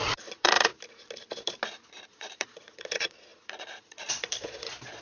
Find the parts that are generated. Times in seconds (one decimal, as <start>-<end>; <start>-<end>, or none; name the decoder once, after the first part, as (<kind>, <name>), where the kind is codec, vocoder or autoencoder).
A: 0.0-0.7 (vocoder, Vocos); 1.9-5.0